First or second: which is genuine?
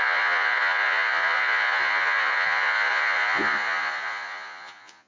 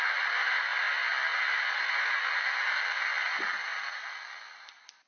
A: second